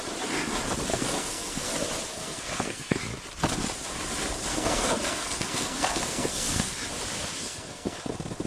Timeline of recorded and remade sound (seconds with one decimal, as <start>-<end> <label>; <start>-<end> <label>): 0.0-0.9 recorded; 0.9-1.7 remade; 1.7-2.1 recorded; 2.1-3.0 remade; 3.0-4.5 recorded; 4.5-6.7 remade; 6.7-7.4 recorded; 7.4-8.0 remade; 8.0-8.5 recorded